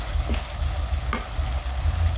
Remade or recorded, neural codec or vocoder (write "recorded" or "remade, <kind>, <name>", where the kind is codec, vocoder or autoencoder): recorded